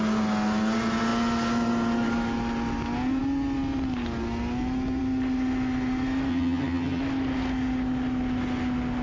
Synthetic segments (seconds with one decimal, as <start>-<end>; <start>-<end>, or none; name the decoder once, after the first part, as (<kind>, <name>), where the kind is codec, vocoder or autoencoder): 6.3-7.0 (vocoder, HiFi-GAN)